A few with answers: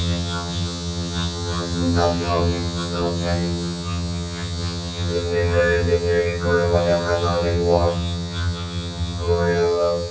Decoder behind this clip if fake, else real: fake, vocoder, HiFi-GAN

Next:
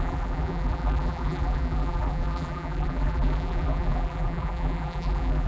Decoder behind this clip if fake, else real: fake, vocoder, BigVGAN v2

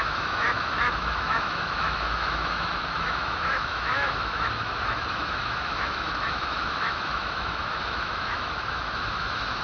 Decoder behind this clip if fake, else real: fake, autoencoder, DAC-VAE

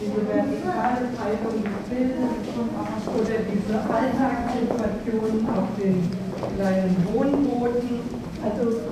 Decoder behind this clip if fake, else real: real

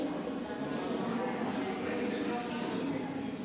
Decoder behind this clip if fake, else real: real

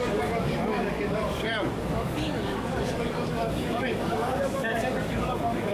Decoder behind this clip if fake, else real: fake, codec, DAC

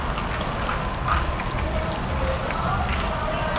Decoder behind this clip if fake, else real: real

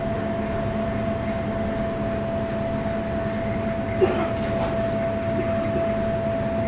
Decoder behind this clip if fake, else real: real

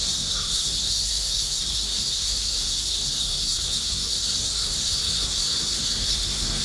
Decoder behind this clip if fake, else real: fake, codec, SNAC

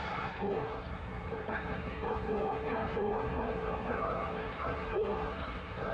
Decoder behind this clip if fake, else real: fake, codec, SNAC